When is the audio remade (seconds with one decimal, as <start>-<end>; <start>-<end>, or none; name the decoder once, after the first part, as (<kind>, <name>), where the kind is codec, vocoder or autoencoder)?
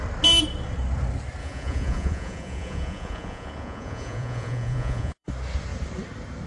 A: 1.4-5.3 (vocoder, Vocos)